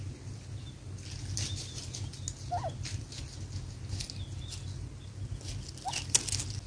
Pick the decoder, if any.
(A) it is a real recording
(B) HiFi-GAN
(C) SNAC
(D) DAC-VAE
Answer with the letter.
A